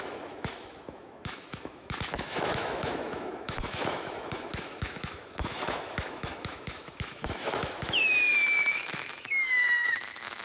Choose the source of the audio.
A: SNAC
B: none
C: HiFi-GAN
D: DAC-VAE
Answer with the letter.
D